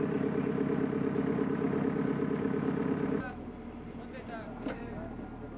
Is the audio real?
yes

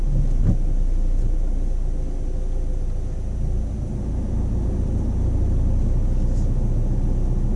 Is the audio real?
yes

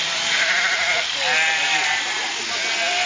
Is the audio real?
yes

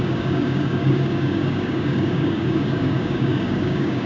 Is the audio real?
no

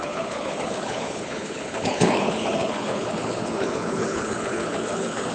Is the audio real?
no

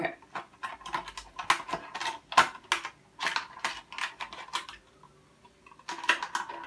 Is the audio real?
yes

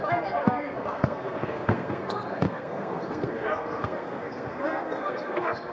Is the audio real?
no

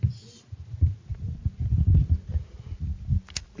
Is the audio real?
yes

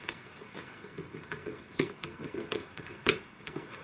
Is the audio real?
no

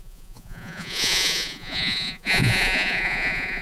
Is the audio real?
no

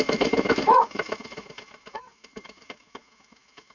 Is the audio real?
no